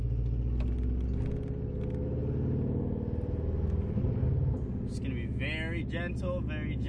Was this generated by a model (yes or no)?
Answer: no